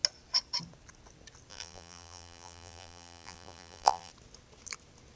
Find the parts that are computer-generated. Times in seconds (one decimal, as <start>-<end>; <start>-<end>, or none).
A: 1.5-4.1